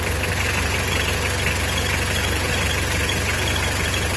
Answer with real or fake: real